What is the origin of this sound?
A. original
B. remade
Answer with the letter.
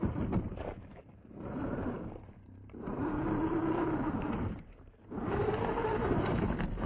B